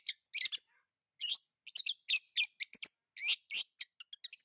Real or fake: real